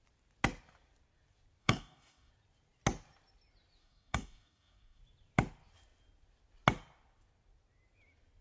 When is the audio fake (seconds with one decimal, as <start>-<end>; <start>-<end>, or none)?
1.6-2.3; 3.8-5.0